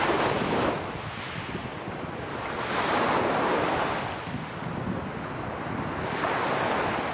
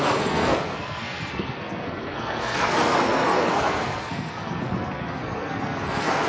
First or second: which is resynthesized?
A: second